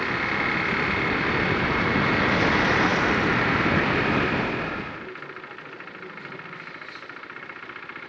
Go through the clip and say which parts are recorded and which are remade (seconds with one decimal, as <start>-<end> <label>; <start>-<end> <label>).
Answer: 0.0-8.1 recorded